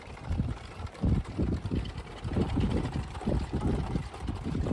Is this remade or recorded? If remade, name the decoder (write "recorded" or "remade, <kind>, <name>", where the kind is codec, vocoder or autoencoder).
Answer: recorded